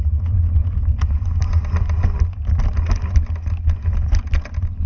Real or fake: real